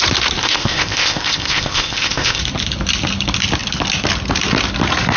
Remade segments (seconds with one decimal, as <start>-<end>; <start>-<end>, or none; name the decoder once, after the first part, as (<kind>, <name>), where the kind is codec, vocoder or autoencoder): 0.4-2.4 (codec, ZipCodec)

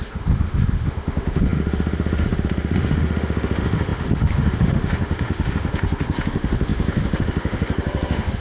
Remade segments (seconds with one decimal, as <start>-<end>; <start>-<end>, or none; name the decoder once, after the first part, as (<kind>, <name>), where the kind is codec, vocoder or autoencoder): 0.0-8.4 (autoencoder, DAC-VAE)

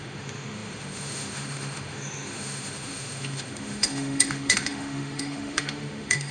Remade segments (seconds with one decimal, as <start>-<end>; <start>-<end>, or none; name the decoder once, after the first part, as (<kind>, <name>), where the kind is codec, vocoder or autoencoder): 0.0-6.3 (autoencoder, DAC-VAE)

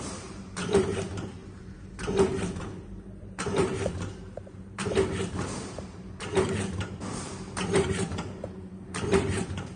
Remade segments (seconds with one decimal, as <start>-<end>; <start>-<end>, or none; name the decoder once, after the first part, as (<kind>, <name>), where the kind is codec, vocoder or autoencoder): 0.0-1.4 (vocoder, BigVGAN v2); 2.6-9.8

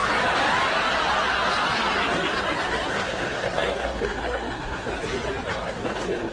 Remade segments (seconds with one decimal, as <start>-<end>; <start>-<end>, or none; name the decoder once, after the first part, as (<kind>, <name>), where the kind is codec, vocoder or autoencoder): 2.9-4.9 (codec, SNAC); 5.5-6.3

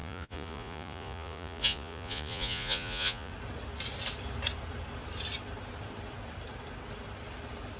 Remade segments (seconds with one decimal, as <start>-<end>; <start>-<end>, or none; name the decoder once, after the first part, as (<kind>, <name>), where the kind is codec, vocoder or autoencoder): 0.0-3.3 (vocoder, Vocos)